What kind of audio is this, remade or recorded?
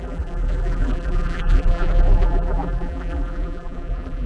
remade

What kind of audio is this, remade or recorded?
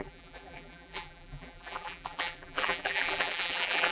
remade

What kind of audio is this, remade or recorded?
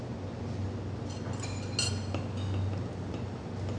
recorded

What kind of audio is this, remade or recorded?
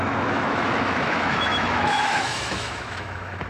remade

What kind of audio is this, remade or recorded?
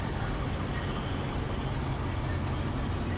recorded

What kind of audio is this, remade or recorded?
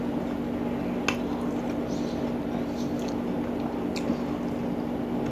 recorded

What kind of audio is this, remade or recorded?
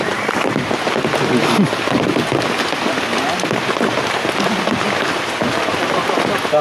recorded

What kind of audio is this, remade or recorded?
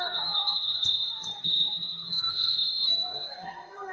remade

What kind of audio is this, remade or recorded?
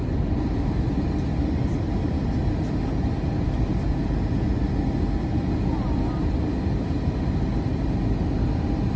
recorded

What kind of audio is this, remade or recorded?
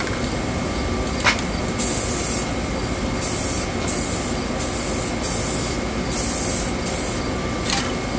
recorded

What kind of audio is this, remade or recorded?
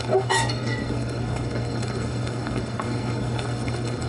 remade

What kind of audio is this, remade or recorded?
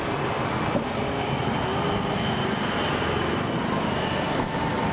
recorded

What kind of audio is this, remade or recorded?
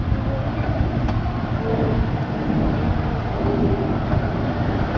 recorded